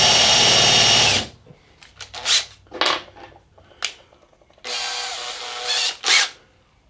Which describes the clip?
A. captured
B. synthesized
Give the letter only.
A